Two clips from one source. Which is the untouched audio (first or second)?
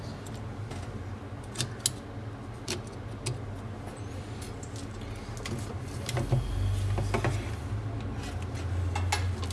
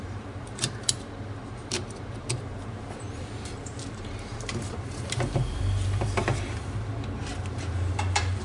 first